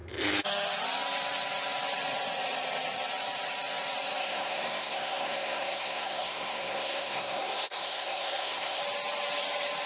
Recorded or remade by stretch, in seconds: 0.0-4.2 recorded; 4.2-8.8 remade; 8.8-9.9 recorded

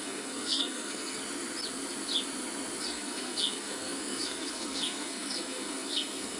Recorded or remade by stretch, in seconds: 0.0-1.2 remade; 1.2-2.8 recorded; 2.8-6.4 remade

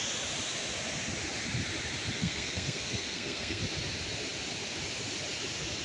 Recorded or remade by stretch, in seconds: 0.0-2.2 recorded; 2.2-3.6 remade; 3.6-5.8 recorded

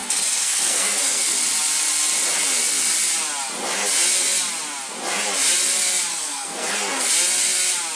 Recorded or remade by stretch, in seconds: 0.0-1.4 remade; 1.4-6.1 recorded; 6.1-7.1 remade; 7.1-8.0 recorded

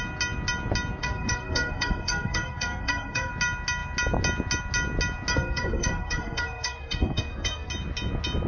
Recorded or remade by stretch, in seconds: 0.0-1.0 recorded; 1.0-3.3 remade; 3.3-5.3 recorded; 5.3-7.7 remade; 7.7-8.5 recorded